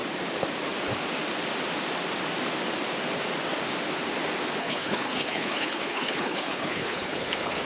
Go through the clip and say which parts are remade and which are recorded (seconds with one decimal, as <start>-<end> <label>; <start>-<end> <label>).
0.0-4.6 recorded; 4.6-7.6 remade